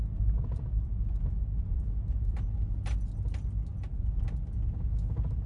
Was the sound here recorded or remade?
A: recorded